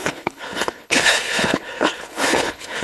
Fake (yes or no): yes